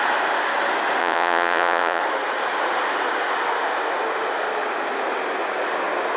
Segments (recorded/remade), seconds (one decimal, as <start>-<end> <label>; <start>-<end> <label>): 0.0-1.0 recorded; 1.0-2.0 remade; 2.0-6.2 recorded